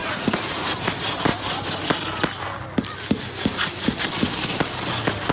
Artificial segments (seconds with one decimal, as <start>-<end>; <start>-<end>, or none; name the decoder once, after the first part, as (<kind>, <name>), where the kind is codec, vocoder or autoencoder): 0.0-0.7 (vocoder, Vocos)